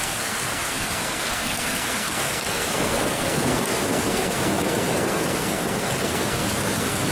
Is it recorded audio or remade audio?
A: remade